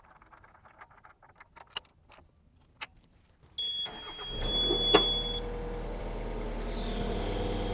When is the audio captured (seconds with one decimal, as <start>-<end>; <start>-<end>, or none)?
0.0-7.7